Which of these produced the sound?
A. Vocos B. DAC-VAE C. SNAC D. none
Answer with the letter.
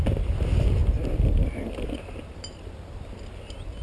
D